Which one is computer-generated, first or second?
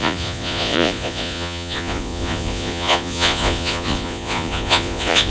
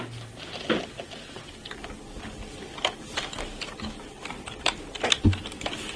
first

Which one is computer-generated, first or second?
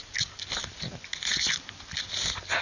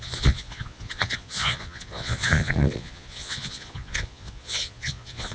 second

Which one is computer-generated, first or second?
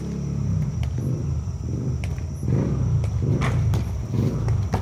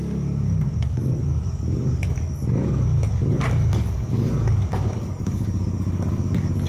second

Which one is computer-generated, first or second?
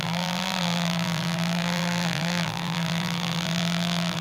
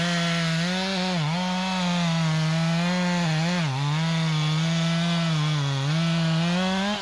first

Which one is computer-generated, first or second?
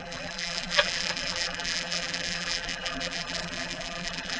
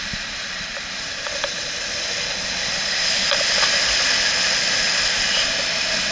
first